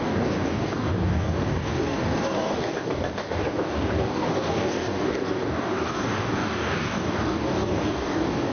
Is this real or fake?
fake